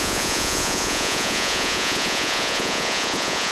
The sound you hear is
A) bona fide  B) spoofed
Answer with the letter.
B